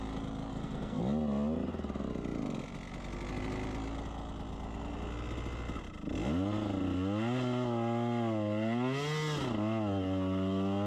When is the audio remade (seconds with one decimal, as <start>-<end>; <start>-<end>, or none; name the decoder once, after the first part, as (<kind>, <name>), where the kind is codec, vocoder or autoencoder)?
0.5-1.0 (codec, SNAC)